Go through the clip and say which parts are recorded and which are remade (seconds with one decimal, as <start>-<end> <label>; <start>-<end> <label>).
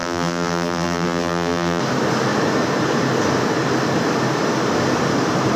0.0-1.8 remade; 1.8-5.6 recorded